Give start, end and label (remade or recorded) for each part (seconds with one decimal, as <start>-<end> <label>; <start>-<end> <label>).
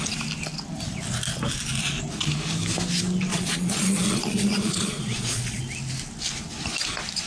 0.0-3.3 recorded; 3.3-5.6 remade; 5.6-7.3 recorded